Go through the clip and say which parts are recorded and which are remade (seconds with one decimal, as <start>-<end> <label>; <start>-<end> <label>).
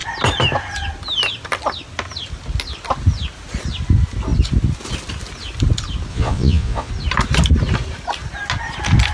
0.0-6.1 recorded; 6.1-6.9 remade; 6.9-9.1 recorded